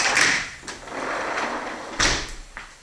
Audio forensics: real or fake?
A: real